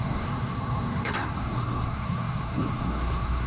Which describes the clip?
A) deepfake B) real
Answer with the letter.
A